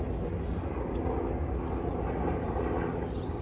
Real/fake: real